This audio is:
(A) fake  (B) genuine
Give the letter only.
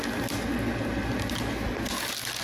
B